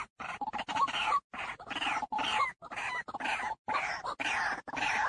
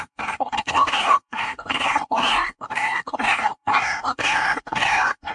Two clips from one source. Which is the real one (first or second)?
first